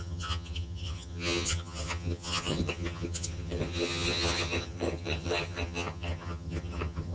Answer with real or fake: fake